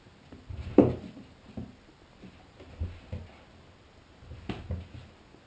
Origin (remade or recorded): recorded